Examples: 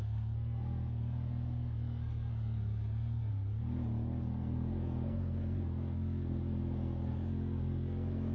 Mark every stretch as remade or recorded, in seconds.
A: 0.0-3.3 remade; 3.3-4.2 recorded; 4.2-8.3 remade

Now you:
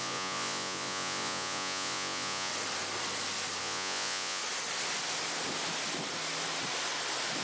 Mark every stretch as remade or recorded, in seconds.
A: 0.0-2.5 remade; 2.5-3.6 recorded; 3.6-4.4 remade; 4.4-7.4 recorded

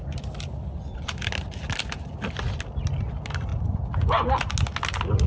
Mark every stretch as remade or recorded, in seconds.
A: 0.0-5.3 recorded

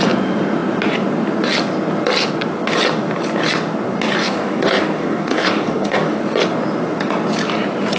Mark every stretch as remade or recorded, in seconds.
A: 0.0-4.2 recorded; 4.2-6.2 remade; 6.2-8.0 recorded

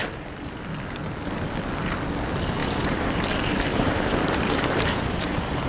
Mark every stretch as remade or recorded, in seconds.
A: 0.0-2.6 recorded; 2.6-3.2 remade; 3.2-3.7 recorded; 3.7-5.7 remade